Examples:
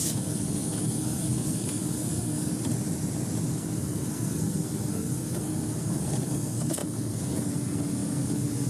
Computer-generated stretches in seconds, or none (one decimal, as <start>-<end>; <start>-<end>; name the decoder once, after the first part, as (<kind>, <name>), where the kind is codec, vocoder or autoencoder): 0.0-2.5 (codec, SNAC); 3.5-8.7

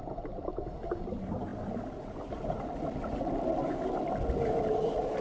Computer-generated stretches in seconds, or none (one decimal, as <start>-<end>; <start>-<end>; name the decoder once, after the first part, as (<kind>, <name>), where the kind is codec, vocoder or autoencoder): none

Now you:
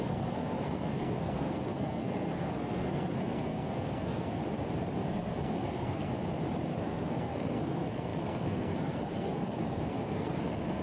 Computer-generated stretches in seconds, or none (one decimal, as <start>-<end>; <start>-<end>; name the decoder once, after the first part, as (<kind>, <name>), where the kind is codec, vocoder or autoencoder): 0.0-4.4 (codec, SNAC); 5.1-6.1; 6.8-10.8

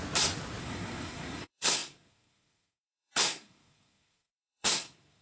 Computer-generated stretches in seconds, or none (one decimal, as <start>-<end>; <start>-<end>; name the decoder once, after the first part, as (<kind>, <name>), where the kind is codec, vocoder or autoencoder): 0.6-5.2 (codec, SNAC)

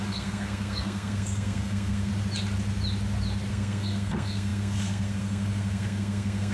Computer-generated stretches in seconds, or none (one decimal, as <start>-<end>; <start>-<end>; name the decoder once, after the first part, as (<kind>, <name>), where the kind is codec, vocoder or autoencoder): 0.0-2.1 (codec, SNAC); 3.5-6.5

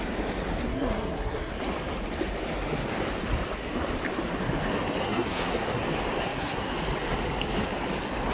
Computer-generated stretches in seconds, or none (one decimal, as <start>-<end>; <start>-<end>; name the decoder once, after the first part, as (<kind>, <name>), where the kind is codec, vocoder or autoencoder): 0.7-1.5 (codec, SNAC); 5.0-5.8; 6.2-6.7

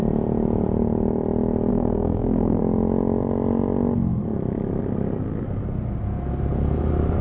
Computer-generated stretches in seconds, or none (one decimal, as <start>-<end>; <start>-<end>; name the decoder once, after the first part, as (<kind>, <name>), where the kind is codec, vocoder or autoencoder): 1.7-2.6 (codec, SNAC)